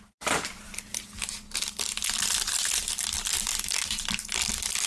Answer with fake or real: real